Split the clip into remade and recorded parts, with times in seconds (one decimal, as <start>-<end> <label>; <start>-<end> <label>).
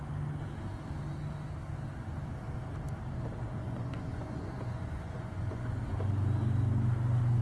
0.0-3.6 recorded; 3.6-5.7 remade; 5.7-7.4 recorded